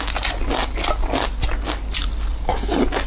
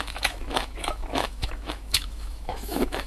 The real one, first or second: first